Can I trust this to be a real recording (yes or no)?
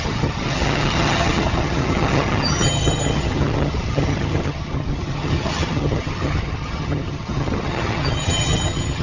no